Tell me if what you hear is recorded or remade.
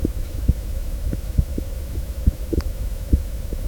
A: remade